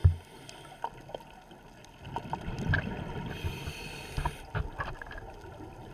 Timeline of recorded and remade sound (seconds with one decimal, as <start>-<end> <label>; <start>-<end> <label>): 0.0-5.9 recorded